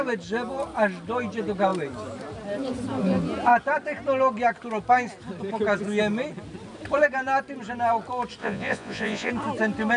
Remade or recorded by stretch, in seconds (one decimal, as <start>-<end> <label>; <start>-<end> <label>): 0.0-8.4 recorded; 8.4-9.3 remade; 9.3-10.0 recorded